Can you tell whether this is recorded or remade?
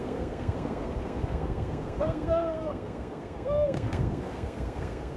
remade